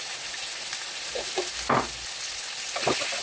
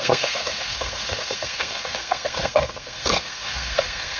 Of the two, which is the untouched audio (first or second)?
first